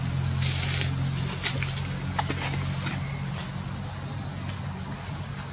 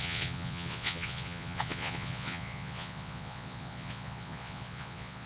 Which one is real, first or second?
first